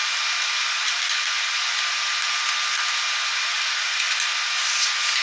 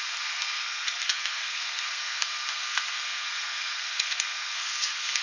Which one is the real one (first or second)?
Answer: first